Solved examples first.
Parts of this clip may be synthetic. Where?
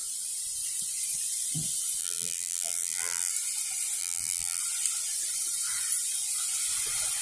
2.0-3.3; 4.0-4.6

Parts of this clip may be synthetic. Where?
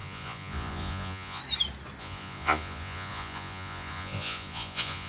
0.0-1.4; 2.0-5.1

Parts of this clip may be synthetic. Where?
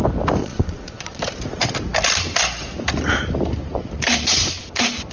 0.4-1.2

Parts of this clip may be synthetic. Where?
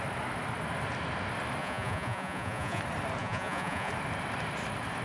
1.6-2.8; 3.2-3.9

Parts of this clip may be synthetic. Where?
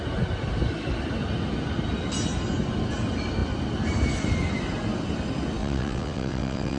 5.6-6.8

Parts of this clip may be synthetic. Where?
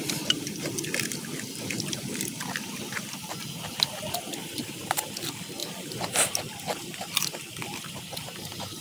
4.4-5.1; 5.6-6.4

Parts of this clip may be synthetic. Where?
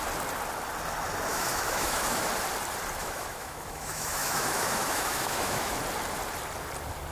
1.3-2.3; 3.0-5.7